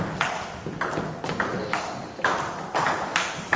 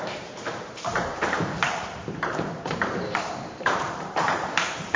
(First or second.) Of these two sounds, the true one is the first